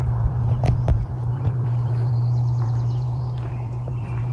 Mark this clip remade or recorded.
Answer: remade